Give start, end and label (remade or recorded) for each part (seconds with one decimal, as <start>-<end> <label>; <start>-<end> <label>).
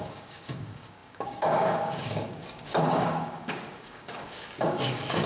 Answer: 0.0-5.3 remade